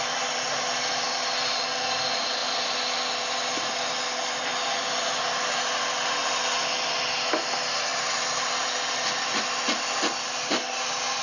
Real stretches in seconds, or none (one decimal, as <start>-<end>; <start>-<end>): 0.0-11.2